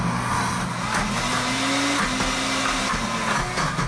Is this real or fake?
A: real